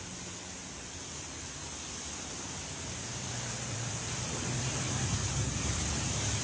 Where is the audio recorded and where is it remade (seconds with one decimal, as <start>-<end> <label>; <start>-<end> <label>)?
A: 0.0-3.1 recorded; 3.1-6.0 remade; 6.0-6.4 recorded